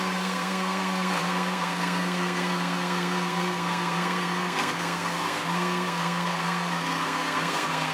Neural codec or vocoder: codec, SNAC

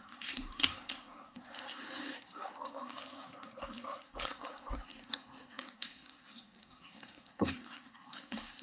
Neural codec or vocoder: codec, SNAC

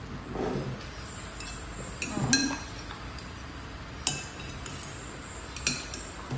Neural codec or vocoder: none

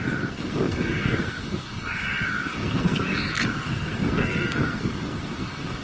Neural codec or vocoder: codec, SNAC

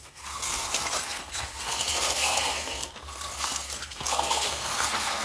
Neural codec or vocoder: codec, SNAC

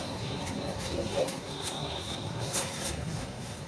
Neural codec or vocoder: codec, SNAC